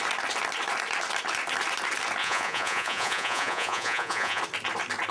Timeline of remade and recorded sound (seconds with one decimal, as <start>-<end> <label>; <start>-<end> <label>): 0.0-2.2 recorded; 2.2-4.4 remade; 4.4-5.1 recorded